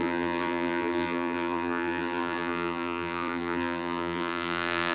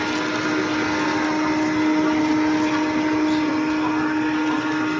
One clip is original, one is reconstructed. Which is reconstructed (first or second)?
first